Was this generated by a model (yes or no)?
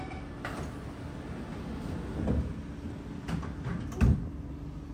no